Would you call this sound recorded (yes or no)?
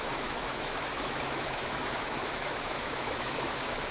no